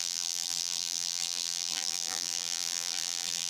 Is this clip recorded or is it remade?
remade